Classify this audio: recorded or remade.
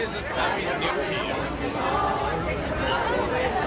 recorded